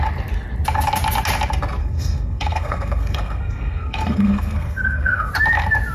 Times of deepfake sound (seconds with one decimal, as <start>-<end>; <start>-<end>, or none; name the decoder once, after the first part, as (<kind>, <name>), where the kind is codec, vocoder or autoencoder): 1.8-5.3 (codec, SNAC)